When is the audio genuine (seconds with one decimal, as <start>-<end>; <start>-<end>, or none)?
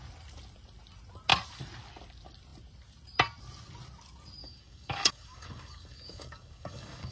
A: 0.0-4.4